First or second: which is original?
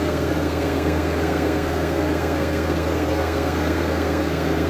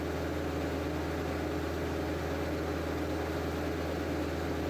second